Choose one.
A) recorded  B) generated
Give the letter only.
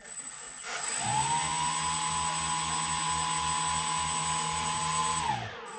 A